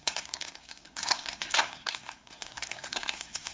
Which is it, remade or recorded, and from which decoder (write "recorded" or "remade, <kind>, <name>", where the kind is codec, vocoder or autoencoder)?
remade, codec, SNAC